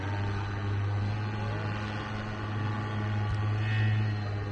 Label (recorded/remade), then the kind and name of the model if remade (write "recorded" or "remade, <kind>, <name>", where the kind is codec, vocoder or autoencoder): recorded